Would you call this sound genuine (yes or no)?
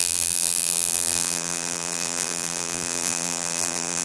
no